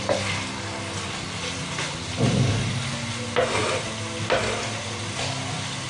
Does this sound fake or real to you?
real